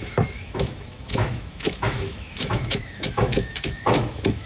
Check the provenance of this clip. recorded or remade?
remade